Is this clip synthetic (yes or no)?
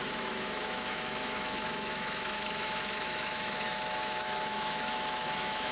yes